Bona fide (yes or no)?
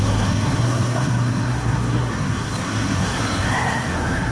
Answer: no